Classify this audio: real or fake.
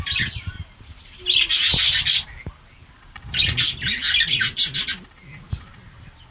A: real